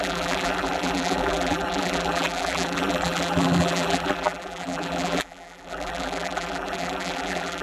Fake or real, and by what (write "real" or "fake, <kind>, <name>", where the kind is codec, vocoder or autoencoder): fake, vocoder, BigVGAN v2